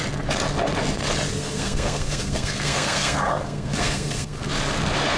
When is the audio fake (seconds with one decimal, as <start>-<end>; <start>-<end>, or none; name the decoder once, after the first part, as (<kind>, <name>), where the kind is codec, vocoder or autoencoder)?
1.4-4.5 (codec, SNAC)